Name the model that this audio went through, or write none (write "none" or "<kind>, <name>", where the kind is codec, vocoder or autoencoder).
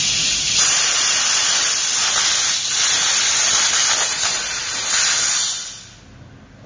none